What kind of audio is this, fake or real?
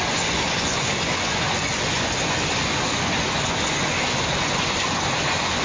fake